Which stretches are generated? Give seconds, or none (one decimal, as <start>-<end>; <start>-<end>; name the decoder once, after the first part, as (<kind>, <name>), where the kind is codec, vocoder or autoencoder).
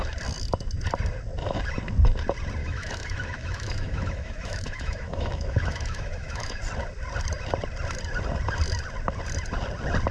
2.6-6.6 (autoencoder, DAC-VAE)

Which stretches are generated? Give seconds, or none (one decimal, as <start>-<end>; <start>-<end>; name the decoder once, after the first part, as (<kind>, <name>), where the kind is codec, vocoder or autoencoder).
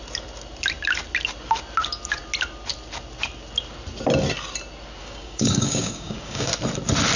5.0-6.5 (codec, DAC)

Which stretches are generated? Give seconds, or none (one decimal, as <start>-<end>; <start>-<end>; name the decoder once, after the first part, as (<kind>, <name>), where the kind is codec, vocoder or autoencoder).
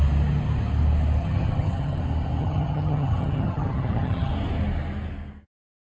1.2-2.0 (vocoder, HiFi-GAN); 2.4-4.3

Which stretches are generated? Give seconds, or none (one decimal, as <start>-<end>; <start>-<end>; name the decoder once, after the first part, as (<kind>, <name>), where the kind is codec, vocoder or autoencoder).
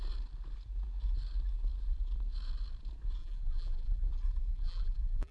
3.2-4.1 (vocoder, BigVGAN v2); 4.5-5.3